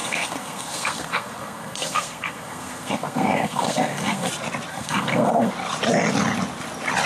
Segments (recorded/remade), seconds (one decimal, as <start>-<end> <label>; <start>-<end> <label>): 0.0-4.3 remade; 4.3-4.7 recorded; 4.7-5.5 remade; 5.5-7.1 recorded